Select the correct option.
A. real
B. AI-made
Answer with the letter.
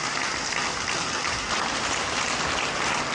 A